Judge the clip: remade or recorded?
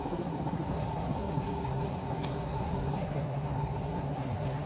remade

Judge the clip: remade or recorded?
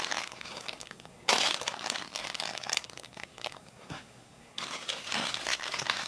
remade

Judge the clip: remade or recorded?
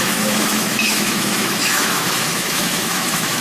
remade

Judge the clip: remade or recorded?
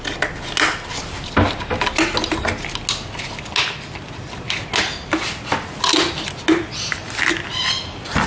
recorded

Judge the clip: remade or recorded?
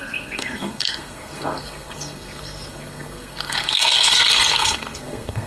remade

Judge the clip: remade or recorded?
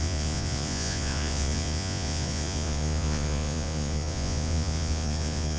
remade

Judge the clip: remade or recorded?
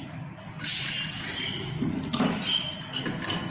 recorded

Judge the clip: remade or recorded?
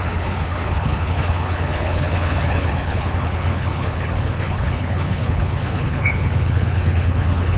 remade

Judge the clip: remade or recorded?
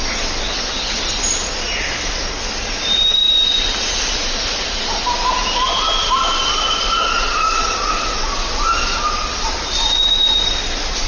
recorded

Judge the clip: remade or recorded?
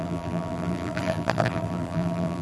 remade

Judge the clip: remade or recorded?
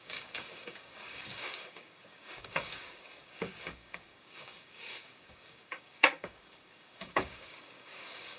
remade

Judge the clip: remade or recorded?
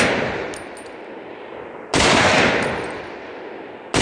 recorded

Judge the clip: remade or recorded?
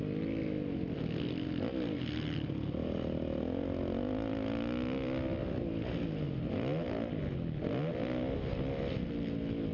recorded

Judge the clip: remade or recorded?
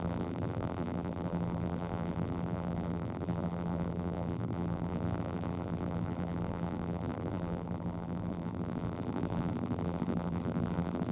remade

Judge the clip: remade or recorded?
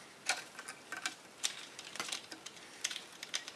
recorded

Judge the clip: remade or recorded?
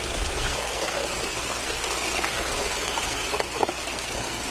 remade